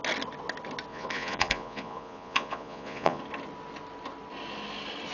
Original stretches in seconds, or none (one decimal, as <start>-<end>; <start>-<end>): 0.0-0.9; 3.2-5.1